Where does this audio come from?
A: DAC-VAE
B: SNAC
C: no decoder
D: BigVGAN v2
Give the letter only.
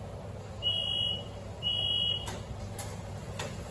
C